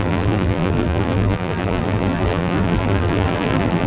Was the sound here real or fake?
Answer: fake